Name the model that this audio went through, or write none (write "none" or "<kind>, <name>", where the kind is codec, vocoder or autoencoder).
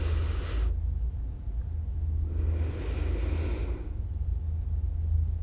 none